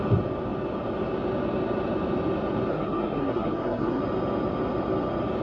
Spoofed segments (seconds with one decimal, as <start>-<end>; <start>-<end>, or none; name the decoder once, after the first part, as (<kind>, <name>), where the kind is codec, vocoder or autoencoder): 2.7-4.0 (codec, SNAC)